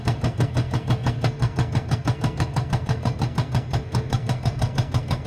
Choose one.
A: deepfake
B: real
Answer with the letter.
A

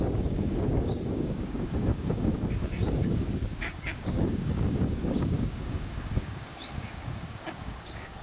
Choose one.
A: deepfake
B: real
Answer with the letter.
A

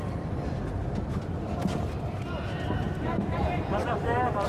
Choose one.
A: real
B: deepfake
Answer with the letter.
A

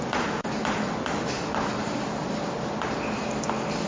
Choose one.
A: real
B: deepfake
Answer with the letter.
A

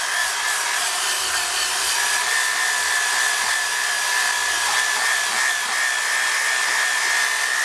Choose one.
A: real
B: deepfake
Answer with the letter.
A